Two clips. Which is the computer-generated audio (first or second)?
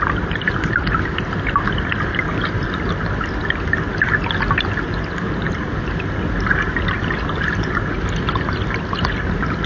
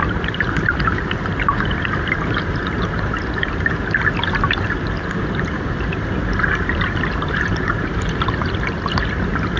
second